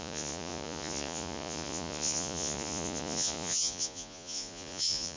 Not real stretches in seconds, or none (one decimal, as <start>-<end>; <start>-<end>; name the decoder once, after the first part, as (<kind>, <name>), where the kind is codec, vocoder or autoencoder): 0.0-5.2 (vocoder, Vocos)